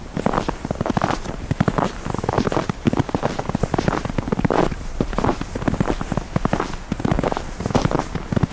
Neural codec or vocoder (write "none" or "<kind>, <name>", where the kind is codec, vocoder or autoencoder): none